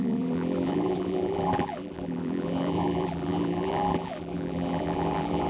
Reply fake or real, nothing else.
fake